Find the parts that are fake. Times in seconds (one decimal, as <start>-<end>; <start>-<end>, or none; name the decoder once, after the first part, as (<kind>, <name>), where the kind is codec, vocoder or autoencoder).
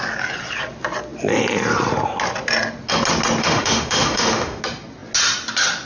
3.4-4.6 (autoencoder, DAC-VAE)